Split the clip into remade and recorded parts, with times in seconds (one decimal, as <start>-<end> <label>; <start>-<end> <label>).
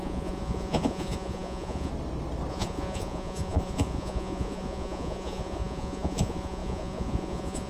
0.0-1.9 remade; 1.9-2.5 recorded; 2.5-7.7 remade